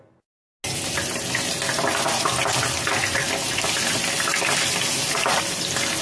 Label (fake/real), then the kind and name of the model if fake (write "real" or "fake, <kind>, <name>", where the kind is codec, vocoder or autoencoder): real